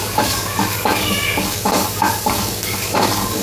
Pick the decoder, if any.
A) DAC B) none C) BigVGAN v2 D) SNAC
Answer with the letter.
A